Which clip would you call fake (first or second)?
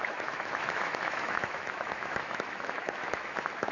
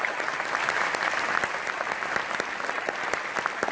first